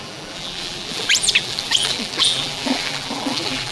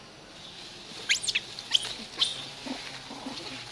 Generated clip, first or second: first